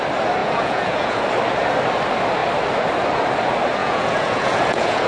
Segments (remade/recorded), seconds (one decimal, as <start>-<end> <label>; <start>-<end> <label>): 0.0-0.4 recorded; 0.4-1.2 remade; 1.2-3.8 recorded; 3.8-5.1 remade